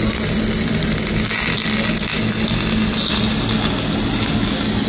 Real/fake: real